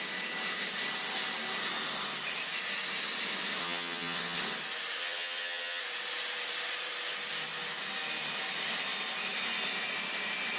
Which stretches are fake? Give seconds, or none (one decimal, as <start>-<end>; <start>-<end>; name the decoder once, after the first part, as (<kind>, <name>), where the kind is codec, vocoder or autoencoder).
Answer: 3.6-4.4 (vocoder, HiFi-GAN); 5.0-5.8